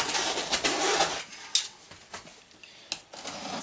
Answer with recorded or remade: recorded